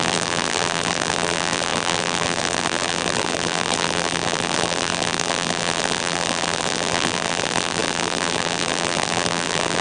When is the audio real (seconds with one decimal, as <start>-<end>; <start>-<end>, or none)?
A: none